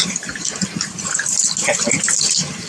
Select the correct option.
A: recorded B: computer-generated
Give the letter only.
A